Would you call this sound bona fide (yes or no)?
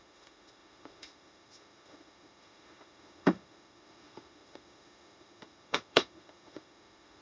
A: no